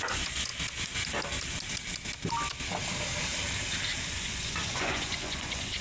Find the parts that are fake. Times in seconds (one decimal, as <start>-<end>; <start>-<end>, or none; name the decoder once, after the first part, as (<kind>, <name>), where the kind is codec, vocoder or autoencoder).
0.0-0.5 (vocoder, Vocos); 4.0-5.8